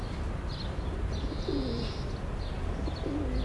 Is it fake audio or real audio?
real